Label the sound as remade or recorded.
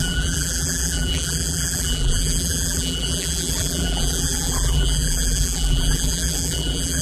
remade